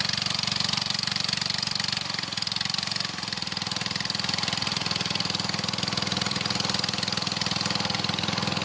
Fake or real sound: real